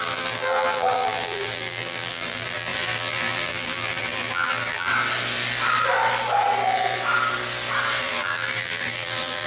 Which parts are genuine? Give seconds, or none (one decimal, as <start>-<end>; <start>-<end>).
4.9-8.0